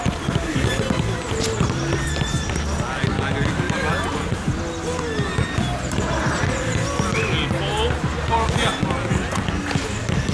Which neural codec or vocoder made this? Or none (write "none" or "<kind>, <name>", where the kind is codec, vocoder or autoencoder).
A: none